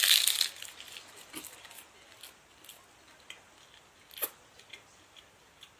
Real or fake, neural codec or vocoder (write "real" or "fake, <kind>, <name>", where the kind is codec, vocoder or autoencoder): real